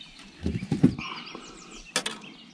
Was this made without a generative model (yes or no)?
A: yes